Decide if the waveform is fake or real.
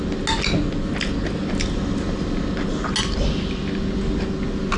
real